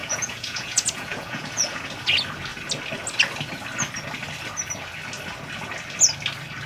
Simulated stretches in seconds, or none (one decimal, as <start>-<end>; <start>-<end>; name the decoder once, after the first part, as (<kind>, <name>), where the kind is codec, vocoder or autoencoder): 0.0-1.9 (vocoder, Vocos)